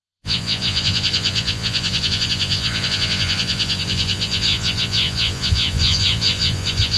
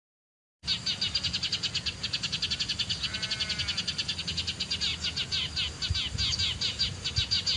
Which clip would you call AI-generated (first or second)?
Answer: first